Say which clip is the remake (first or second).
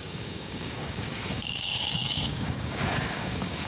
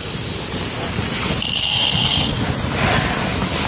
first